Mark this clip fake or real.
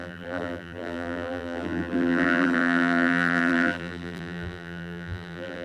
fake